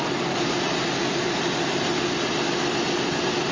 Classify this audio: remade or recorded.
recorded